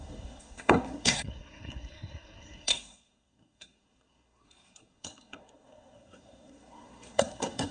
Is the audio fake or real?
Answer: fake